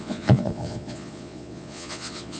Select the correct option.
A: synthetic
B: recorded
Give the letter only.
A